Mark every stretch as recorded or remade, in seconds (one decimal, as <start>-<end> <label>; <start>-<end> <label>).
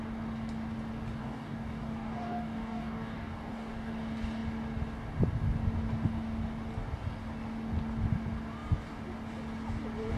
0.0-1.2 recorded; 1.2-3.9 remade; 3.9-10.2 recorded